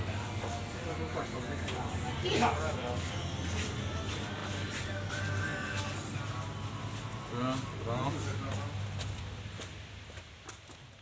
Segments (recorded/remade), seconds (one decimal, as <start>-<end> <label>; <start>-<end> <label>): 0.0-11.0 recorded